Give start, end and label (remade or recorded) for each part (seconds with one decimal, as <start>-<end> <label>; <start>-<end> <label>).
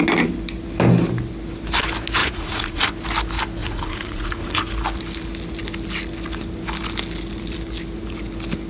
0.0-2.2 recorded; 2.2-2.9 remade; 2.9-3.6 recorded; 3.6-4.6 remade; 4.6-8.7 recorded